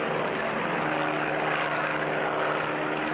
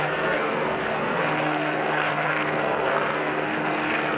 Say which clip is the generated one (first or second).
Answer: second